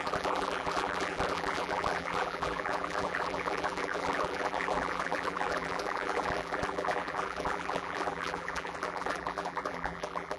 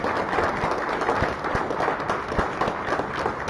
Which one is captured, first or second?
second